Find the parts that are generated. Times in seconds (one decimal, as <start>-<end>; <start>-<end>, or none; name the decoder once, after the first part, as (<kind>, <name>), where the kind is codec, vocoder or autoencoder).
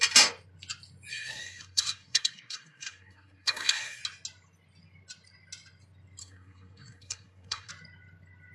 1.1-4.0 (codec, SNAC); 6.2-7.7